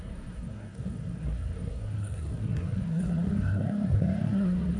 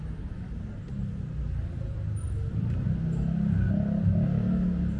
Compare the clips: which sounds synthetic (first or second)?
first